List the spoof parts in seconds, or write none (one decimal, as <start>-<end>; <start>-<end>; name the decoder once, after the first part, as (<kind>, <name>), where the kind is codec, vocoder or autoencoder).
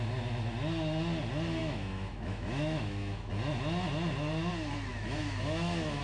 1.6-3.3 (autoencoder, DAC-VAE); 4.9-6.0